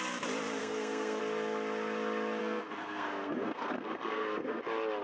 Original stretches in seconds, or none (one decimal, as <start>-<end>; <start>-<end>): 0.0-0.6; 1.2-2.4; 4.6-5.0